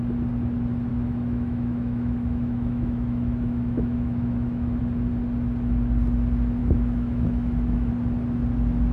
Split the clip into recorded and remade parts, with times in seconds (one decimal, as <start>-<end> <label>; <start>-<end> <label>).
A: 0.0-0.9 recorded; 0.9-4.8 remade; 4.8-6.6 recorded; 6.6-7.9 remade; 7.9-8.9 recorded